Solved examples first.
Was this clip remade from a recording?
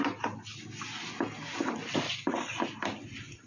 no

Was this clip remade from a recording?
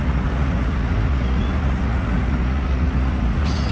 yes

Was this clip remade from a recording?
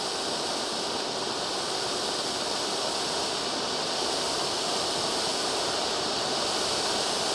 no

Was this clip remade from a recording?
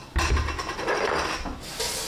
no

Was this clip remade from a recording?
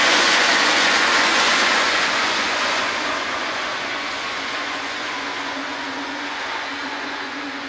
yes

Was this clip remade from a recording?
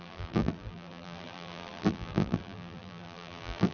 yes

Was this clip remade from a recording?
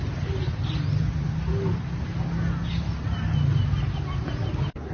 no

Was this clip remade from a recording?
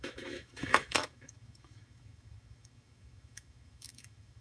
yes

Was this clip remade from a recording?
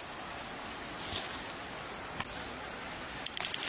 no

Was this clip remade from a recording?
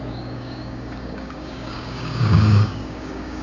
yes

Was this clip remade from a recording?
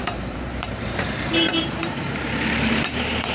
yes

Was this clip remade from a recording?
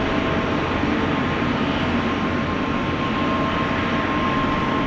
no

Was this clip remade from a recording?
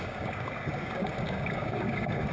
yes